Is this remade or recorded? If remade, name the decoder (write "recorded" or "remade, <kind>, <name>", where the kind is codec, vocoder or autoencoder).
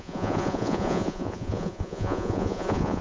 remade, vocoder, Vocos